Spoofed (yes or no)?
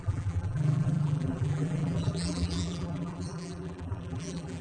yes